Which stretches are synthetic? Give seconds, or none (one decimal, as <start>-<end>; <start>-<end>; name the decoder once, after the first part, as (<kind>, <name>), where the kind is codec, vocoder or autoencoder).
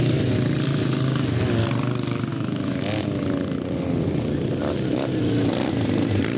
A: 2.3-2.8 (autoencoder, DAC-VAE)